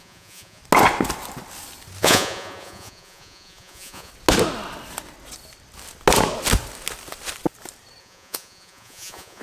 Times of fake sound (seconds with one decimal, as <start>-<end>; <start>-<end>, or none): 0.0-0.6; 2.0-4.1; 8.0-9.4